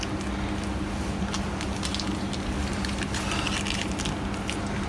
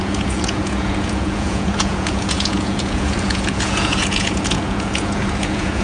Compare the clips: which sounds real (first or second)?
first